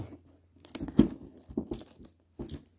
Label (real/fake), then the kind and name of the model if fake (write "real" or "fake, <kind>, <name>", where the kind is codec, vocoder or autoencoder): real